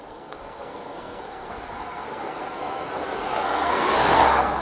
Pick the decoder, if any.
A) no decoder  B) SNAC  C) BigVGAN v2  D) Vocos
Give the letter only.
B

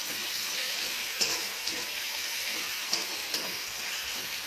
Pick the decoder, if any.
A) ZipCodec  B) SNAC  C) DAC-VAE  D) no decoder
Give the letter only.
B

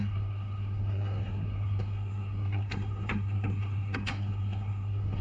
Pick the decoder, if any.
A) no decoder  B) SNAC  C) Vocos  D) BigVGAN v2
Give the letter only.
B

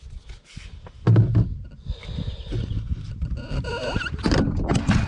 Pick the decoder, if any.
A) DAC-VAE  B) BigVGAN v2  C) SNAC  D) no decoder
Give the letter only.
D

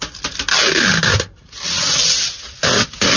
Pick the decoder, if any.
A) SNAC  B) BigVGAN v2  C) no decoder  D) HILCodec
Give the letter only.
C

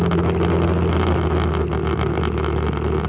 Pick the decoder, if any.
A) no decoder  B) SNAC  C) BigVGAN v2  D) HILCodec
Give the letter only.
A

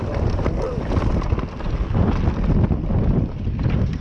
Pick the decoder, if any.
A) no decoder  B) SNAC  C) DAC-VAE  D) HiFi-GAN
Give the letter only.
A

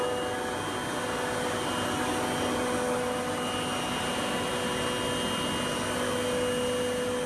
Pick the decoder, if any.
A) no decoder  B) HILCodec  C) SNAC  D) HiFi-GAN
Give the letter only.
A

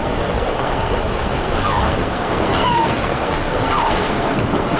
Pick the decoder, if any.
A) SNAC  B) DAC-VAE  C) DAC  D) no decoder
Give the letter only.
A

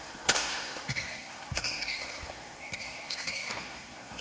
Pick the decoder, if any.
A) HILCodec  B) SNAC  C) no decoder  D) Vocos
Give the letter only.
B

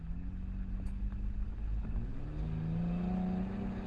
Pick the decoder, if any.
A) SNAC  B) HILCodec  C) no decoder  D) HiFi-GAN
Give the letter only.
C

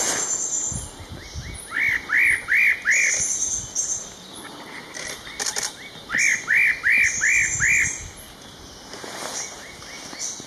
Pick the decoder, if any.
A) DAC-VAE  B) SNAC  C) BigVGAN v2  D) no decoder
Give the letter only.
D